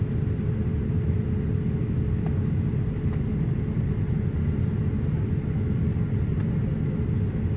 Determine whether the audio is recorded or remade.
recorded